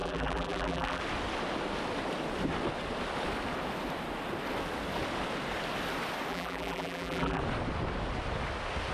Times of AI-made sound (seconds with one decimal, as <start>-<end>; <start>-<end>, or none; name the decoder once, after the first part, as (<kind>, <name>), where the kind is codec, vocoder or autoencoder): 0.0-1.0 (vocoder, BigVGAN v2); 6.3-7.4